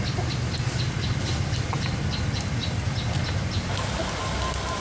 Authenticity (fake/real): real